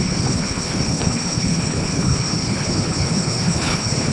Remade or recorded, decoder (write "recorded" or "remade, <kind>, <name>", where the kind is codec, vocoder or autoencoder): remade, codec, HILCodec